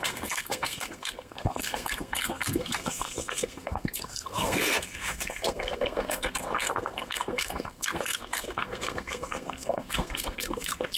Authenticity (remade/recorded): remade